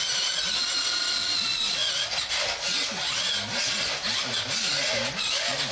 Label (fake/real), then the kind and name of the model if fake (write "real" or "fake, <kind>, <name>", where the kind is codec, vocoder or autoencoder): real